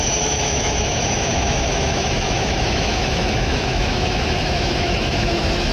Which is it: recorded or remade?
remade